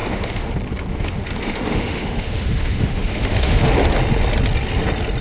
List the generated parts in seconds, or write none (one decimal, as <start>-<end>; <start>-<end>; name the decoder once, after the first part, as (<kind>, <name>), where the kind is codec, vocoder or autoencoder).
0.0-0.5 (autoencoder, DAC-VAE); 0.9-3.6